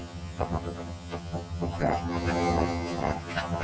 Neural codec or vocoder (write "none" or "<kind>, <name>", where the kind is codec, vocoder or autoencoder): vocoder, HiFi-GAN